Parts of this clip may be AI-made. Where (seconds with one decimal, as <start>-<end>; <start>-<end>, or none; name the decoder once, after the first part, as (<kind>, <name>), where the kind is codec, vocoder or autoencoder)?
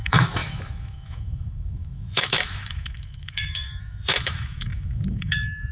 0.0-5.7 (autoencoder, DAC-VAE)